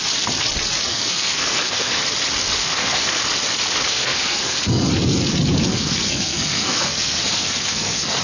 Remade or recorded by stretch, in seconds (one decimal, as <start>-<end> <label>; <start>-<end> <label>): 0.0-0.9 recorded; 0.9-2.0 remade; 2.0-2.6 recorded; 2.6-3.2 remade; 3.2-3.9 recorded; 3.9-4.9 remade; 4.9-5.7 recorded; 5.7-8.2 remade